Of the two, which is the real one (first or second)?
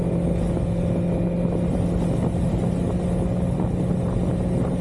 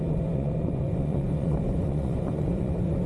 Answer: first